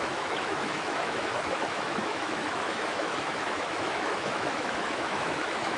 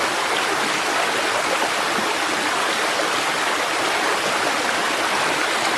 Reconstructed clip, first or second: first